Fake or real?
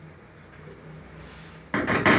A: real